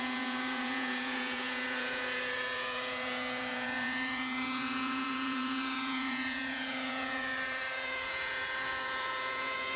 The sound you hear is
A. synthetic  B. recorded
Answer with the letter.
A